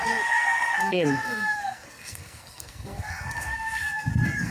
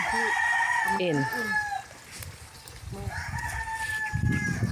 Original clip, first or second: second